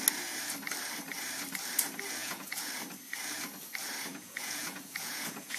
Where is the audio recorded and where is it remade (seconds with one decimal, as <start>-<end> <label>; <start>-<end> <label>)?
0.0-2.2 recorded; 2.2-2.7 remade; 2.7-4.1 recorded; 4.1-5.6 remade